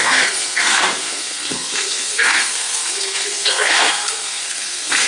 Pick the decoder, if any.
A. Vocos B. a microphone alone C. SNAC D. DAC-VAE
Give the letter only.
C